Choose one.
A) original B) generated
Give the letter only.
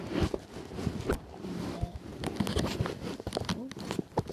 A